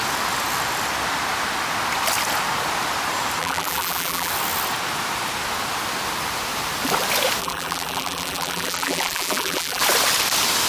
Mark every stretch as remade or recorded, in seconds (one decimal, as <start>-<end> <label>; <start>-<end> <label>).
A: 0.0-3.4 recorded; 3.4-4.3 remade; 4.3-7.4 recorded; 7.4-9.8 remade; 9.8-10.7 recorded